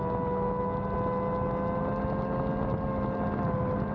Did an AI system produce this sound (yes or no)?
no